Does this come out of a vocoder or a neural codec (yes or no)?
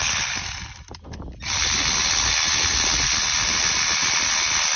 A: no